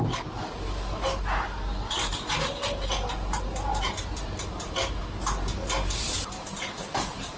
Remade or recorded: recorded